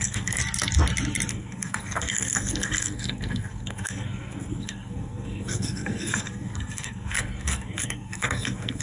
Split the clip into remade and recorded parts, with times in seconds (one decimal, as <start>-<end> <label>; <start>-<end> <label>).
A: 0.0-0.4 remade; 0.4-1.3 recorded; 1.3-8.8 remade